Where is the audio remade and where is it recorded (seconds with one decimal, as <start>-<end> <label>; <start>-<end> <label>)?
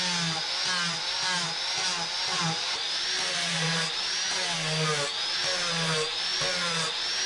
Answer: 0.0-2.3 recorded; 2.3-4.3 remade; 4.3-7.3 recorded